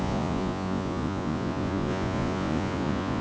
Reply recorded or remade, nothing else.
remade